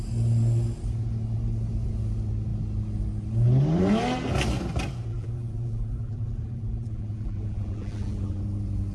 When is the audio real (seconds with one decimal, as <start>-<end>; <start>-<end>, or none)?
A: 0.0-5.1; 8.4-8.9